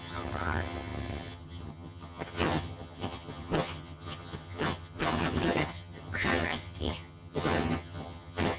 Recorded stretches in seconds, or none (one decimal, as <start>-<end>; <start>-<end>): none